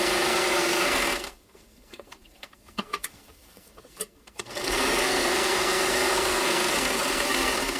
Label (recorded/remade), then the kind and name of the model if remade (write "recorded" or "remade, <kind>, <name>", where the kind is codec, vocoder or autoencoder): remade, codec, SNAC